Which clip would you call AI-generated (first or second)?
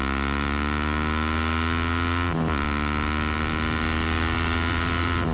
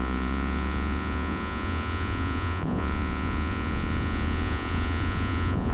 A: second